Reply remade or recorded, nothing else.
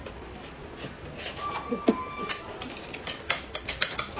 recorded